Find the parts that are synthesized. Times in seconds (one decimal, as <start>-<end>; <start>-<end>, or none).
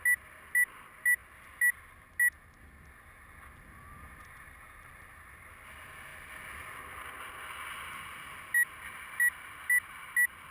none